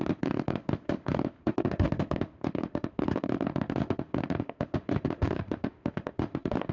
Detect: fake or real fake